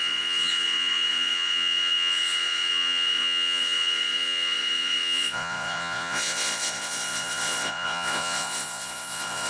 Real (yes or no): no